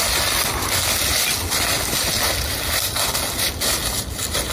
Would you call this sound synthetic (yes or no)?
no